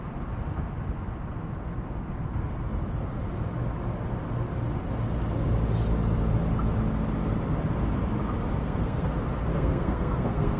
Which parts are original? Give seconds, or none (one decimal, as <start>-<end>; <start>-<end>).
0.0-8.6; 9.1-9.5